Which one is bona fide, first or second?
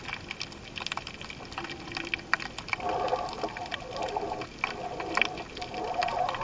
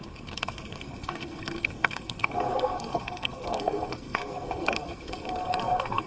first